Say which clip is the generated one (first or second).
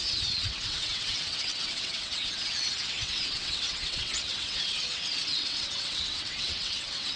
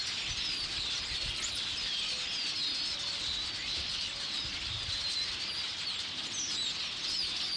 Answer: first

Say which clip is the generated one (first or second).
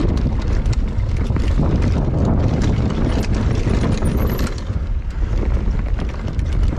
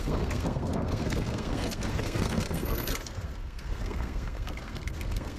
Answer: second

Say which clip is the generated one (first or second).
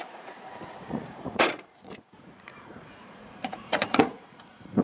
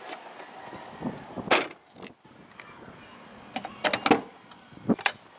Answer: first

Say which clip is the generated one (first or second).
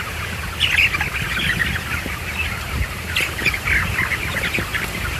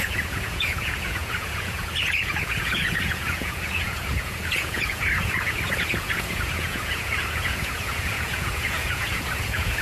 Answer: second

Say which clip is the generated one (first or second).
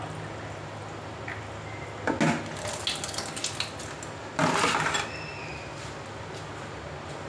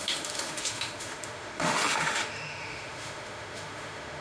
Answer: second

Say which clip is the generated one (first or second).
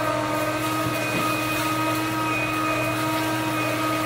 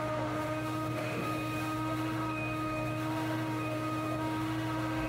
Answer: second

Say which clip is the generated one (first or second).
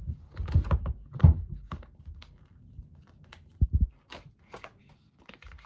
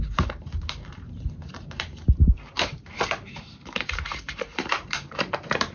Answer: second